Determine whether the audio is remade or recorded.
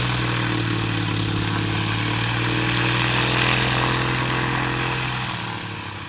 recorded